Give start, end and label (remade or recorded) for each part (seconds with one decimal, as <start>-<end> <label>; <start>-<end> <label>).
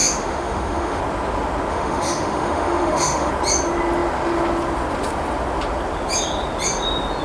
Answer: 0.0-1.0 remade; 1.0-1.7 recorded; 1.7-3.3 remade; 3.3-7.2 recorded